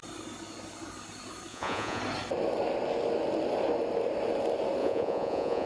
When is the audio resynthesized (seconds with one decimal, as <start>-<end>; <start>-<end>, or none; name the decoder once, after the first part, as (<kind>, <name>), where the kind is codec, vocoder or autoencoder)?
1.5-2.0 (vocoder, Vocos); 4.8-5.7